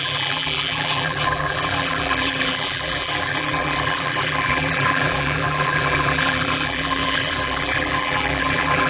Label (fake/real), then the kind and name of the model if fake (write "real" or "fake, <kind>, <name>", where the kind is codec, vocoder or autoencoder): fake, vocoder, BigVGAN v2